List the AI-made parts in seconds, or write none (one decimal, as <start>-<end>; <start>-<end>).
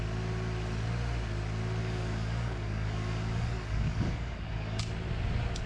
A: 1.8-4.8